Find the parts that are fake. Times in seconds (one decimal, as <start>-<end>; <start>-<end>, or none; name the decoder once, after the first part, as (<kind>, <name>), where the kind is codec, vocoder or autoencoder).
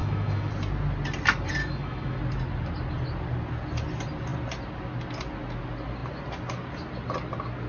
0.0-0.5 (autoencoder, DAC-VAE); 1.6-2.2